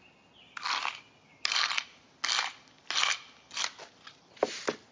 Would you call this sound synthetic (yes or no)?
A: no